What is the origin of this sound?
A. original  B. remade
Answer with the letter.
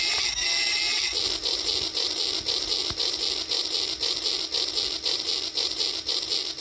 A